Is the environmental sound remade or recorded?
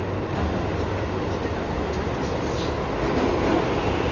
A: recorded